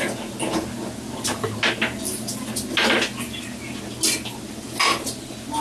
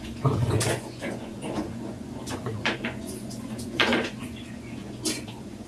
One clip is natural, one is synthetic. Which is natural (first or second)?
first